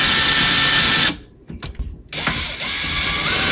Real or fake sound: real